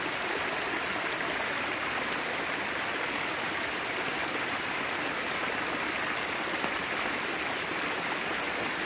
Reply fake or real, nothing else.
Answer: real